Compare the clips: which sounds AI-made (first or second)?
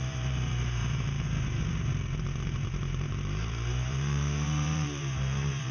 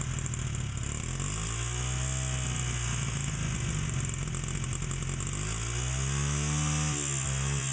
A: first